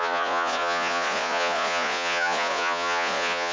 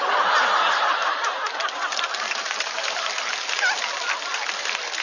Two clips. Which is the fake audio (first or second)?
first